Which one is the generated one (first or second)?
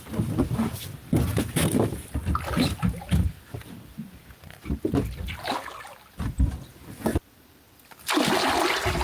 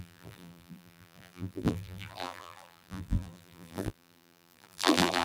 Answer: second